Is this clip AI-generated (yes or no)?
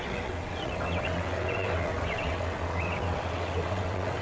yes